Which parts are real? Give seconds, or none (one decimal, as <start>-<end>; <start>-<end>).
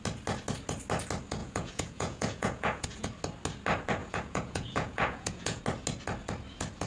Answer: 0.0-1.4; 3.1-4.0; 5.6-6.9